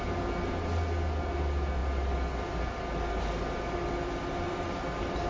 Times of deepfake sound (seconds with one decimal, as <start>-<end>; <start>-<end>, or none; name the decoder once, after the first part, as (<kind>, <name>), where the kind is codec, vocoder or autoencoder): none